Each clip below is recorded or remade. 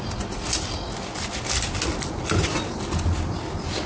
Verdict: recorded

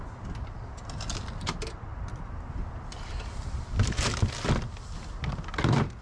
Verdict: recorded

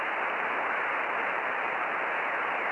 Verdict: recorded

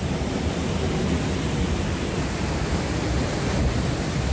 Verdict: recorded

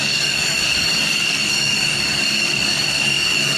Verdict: remade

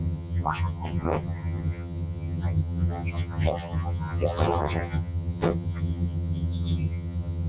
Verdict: remade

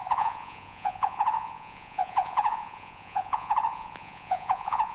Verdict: remade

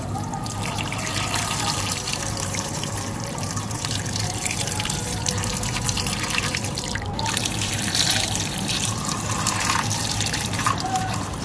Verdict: remade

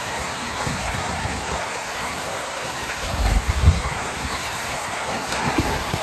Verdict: remade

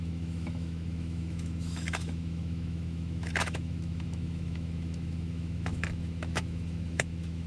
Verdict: remade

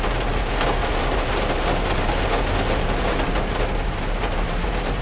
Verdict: recorded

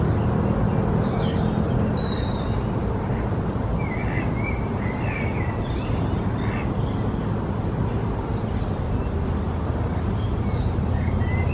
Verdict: recorded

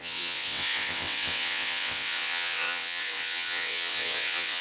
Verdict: remade